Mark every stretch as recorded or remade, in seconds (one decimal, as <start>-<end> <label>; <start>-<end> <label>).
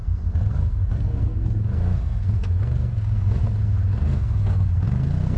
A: 0.0-5.4 remade